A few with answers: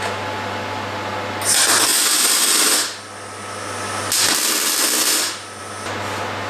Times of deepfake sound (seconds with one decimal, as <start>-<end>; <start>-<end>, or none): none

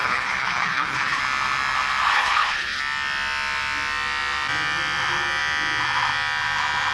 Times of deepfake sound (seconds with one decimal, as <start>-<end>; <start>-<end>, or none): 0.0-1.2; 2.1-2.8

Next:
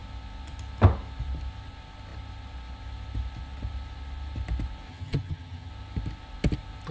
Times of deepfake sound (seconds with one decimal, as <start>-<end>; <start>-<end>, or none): 4.9-5.7

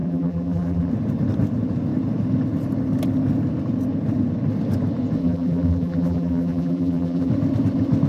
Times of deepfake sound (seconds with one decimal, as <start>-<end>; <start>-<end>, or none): 0.0-0.9; 5.2-7.3

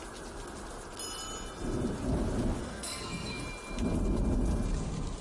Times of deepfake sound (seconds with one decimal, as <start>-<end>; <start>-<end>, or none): 2.6-3.4